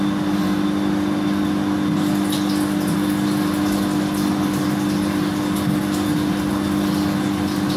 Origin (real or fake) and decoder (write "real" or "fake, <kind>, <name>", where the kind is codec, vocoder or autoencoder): real